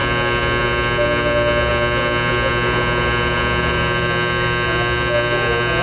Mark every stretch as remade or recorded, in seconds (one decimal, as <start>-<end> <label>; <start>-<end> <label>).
0.0-5.8 recorded